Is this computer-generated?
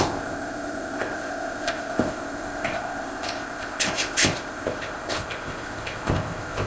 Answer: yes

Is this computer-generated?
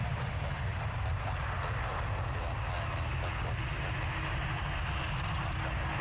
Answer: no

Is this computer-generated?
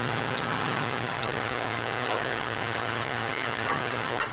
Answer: yes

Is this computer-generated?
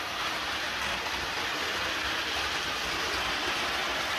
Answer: no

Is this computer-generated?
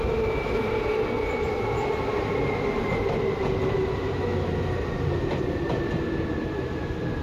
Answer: no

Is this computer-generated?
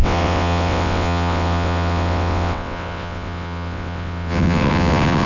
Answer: yes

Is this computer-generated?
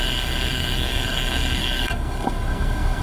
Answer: yes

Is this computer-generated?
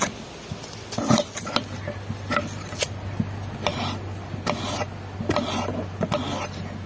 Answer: no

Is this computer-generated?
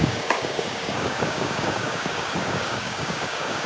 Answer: yes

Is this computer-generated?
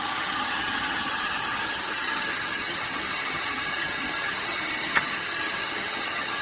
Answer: yes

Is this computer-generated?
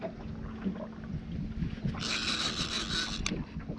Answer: no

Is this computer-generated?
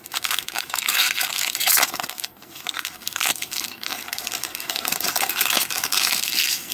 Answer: yes